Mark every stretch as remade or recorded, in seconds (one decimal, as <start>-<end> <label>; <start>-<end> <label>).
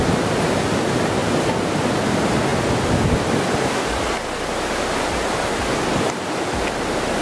0.0-7.2 recorded